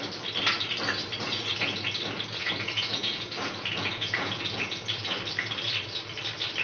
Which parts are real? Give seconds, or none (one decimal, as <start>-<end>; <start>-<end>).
0.0-2.4; 5.2-6.6